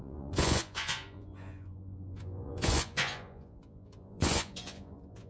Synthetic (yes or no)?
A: yes